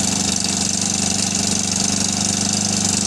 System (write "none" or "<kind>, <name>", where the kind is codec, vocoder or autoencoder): none